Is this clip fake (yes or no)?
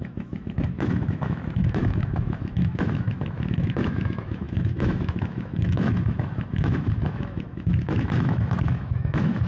yes